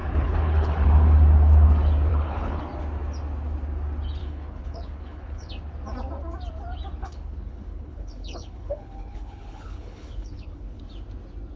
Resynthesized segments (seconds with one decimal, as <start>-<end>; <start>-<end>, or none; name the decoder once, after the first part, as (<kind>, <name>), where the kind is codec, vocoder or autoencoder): 0.0-0.9 (codec, HILCodec); 2.1-2.6; 4.2-5.5; 7.0-10.8

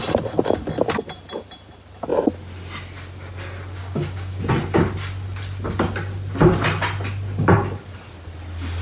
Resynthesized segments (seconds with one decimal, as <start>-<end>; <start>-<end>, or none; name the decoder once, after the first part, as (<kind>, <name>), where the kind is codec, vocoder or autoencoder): 3.8-4.4 (codec, DAC)

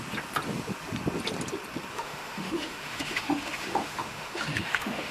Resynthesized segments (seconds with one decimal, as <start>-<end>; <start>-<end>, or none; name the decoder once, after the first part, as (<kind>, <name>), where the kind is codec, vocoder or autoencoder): 1.9-5.1 (autoencoder, DAC-VAE)

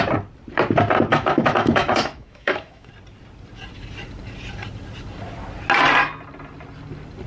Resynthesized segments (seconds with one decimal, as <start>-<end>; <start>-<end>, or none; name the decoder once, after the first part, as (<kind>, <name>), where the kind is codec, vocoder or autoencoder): 1.1-2.9 (autoencoder, DAC-VAE)

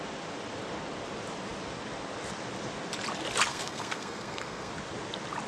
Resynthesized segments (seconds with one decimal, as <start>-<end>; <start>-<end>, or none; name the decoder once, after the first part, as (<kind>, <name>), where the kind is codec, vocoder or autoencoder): 3.5-4.7 (codec, SNAC)

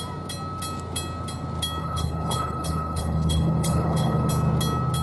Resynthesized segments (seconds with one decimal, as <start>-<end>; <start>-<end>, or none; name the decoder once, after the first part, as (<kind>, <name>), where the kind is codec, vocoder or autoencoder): 1.8-4.3 (codec, HILCodec)